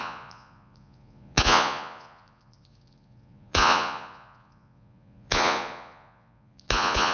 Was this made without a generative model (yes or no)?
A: no